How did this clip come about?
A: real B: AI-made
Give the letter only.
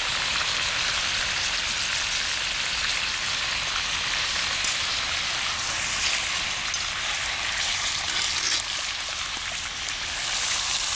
A